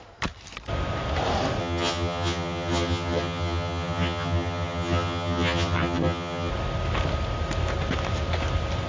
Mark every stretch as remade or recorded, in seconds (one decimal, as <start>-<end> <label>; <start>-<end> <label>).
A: 0.0-1.6 recorded; 1.6-6.5 remade; 6.5-8.9 recorded

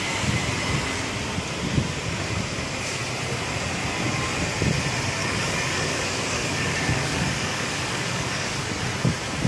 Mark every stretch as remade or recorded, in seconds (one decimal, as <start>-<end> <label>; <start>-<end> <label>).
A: 0.0-5.2 recorded; 5.2-8.8 remade; 8.8-9.5 recorded

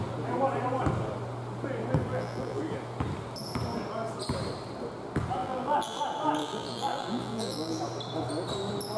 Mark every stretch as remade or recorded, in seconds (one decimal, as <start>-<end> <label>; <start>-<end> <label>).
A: 0.0-2.1 recorded; 2.1-2.6 remade; 2.6-5.4 recorded; 5.4-6.0 remade; 6.0-6.4 recorded; 6.4-7.8 remade; 7.8-9.0 recorded

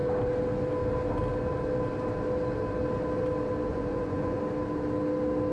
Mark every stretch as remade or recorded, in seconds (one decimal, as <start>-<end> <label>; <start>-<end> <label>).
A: 0.0-3.7 recorded; 3.7-4.4 remade; 4.4-5.5 recorded